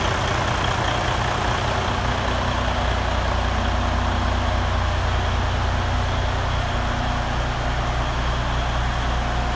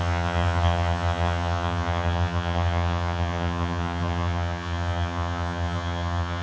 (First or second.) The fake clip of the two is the second